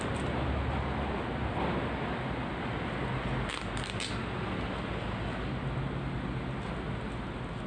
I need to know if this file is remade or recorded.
recorded